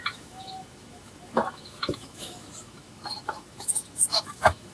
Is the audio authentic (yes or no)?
no